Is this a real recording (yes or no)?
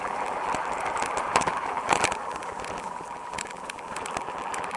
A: no